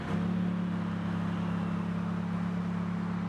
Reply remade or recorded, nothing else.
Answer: recorded